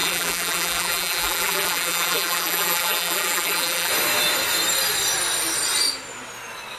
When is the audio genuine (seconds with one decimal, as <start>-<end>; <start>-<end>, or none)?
3.9-6.8